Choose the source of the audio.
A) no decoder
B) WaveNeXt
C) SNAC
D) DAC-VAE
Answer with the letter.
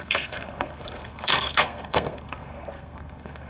C